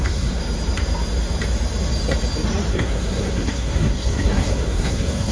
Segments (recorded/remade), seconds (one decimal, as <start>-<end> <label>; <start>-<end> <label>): 0.0-0.4 remade; 0.4-2.7 recorded; 2.7-5.3 remade